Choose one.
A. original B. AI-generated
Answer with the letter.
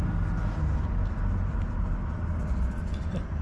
A